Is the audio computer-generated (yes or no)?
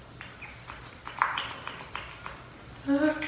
no